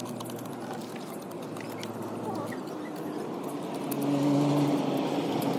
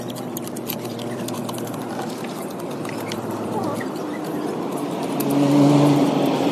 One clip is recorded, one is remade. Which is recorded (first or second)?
first